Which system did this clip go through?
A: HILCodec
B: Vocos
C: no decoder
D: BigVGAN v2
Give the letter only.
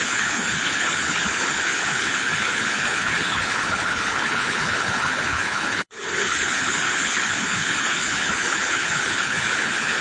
A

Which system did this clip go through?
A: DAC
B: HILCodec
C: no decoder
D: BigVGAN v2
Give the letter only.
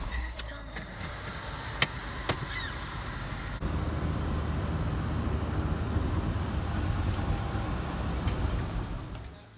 C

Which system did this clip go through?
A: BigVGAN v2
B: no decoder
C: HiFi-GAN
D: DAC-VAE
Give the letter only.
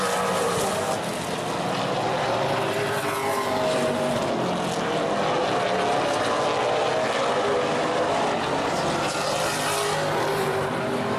B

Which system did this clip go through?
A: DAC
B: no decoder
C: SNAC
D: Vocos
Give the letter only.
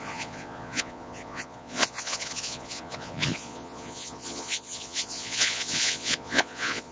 D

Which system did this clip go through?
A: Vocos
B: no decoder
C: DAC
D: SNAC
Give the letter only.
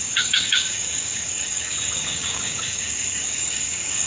C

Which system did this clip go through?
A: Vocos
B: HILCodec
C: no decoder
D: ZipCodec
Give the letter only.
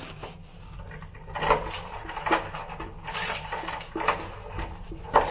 C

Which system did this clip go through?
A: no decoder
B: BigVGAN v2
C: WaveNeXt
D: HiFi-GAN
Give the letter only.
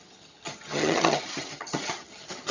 D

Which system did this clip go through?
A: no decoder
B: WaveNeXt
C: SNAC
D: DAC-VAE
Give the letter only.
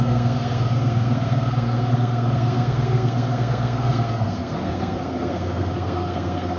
C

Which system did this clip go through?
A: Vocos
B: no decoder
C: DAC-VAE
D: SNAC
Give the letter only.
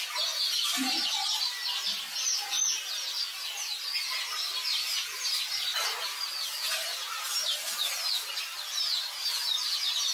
B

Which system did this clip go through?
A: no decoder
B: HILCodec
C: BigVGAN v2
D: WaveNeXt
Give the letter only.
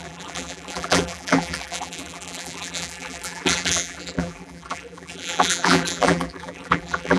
C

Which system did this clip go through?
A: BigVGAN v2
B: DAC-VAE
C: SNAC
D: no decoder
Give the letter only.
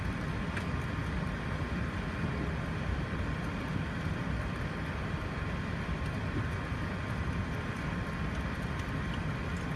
D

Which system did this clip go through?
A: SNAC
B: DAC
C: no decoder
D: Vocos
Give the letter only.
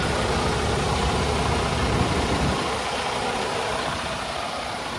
C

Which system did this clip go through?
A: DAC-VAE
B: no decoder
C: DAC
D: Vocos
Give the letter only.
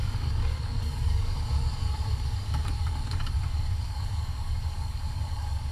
C